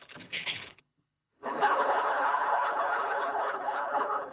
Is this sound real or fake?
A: fake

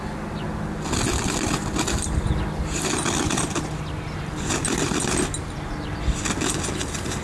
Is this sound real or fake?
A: real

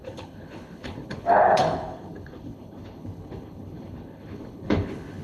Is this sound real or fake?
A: fake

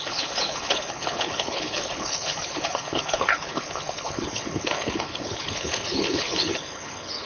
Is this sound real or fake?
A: fake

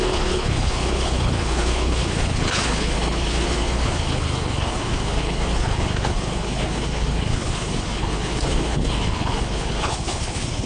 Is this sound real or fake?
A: fake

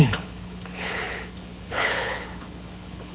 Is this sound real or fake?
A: fake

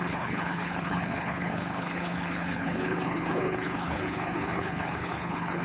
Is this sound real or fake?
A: fake